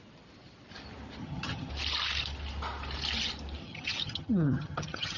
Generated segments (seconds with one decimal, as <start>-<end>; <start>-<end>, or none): 1.2-1.7; 3.6-5.2